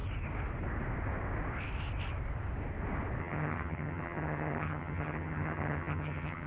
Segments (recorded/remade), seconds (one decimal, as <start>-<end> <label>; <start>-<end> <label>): 0.0-3.2 recorded; 3.2-6.5 remade